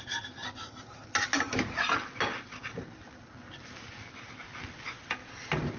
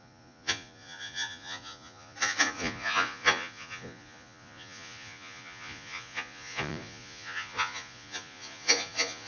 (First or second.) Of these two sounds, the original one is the first